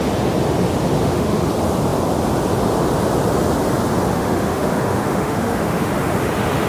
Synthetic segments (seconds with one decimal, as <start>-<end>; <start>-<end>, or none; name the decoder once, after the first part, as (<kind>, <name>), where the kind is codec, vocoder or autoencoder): 1.0-1.5 (autoencoder, DAC-VAE); 4.1-5.9